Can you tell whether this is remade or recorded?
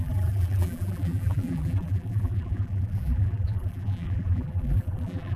remade